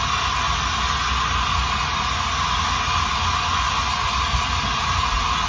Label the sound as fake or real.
real